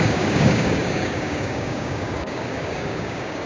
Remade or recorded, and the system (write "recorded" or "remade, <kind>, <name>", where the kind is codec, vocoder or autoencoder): remade, codec, DAC